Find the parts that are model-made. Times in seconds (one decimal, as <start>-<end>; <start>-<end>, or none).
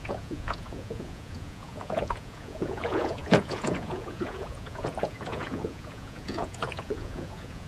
0.0-7.7